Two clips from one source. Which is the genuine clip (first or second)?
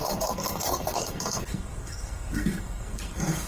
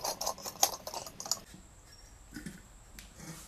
second